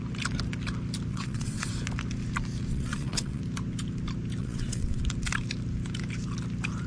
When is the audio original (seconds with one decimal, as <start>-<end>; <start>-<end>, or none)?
0.0-1.1; 1.7-2.7; 3.4-4.4; 5.0-6.9

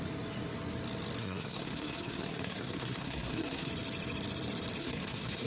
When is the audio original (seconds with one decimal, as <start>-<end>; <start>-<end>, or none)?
0.0-1.2; 3.7-4.8